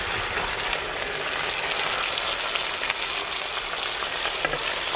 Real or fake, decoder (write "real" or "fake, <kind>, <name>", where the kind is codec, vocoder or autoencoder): real